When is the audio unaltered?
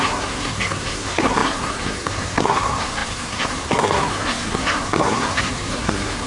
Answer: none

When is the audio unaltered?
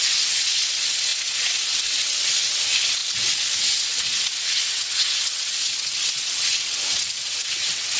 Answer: none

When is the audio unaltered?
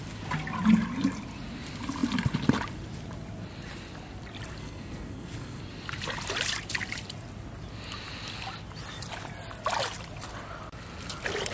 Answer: 0.0-4.6; 5.6-11.5